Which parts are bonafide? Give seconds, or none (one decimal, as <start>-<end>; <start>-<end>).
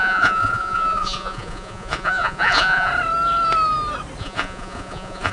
2.9-4.2